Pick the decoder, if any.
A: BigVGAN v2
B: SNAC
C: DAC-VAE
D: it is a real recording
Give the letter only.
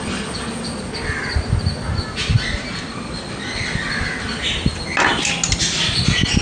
D